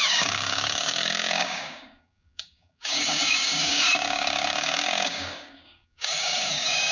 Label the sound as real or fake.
fake